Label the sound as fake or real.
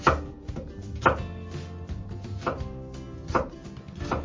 real